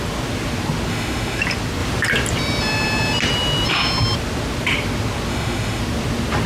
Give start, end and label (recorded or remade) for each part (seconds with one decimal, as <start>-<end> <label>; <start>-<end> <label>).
0.0-0.9 recorded; 0.9-1.4 remade; 1.4-5.3 recorded; 5.3-5.8 remade; 5.8-6.5 recorded